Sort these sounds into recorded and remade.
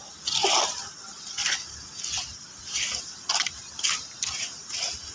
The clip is recorded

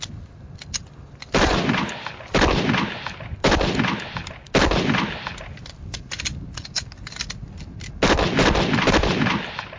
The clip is recorded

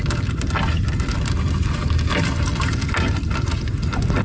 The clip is recorded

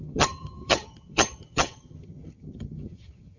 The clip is remade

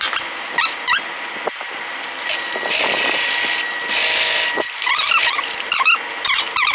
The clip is recorded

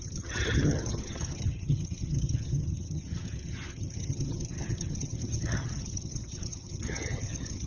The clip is remade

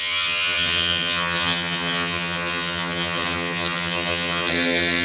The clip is remade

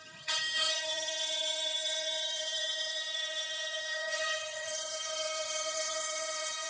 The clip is remade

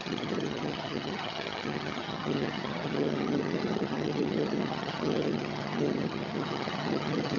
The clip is remade